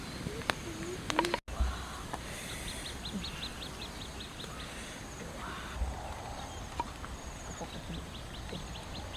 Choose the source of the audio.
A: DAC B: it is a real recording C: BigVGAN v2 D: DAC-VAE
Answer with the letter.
B